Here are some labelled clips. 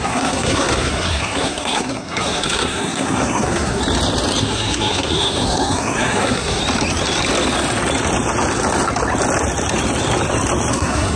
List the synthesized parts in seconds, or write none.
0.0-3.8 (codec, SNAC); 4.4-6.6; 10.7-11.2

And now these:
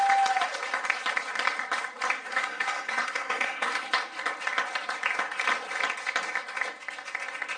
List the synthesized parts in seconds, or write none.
2.3-3.9 (codec, SNAC)

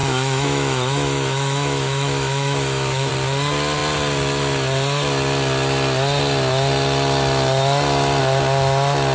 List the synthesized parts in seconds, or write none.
0.0-3.1 (autoencoder, DAC-VAE)

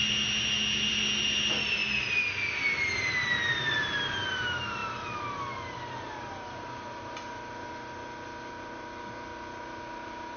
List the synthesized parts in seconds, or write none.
none